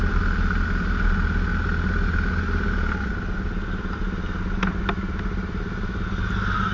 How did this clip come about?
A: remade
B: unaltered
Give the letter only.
B